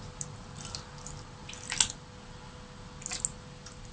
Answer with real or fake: real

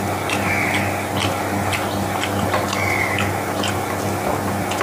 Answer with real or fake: real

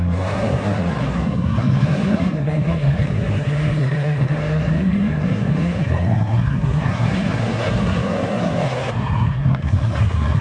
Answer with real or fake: fake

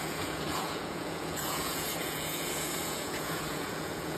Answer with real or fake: fake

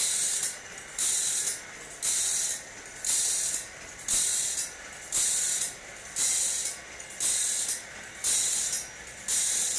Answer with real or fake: real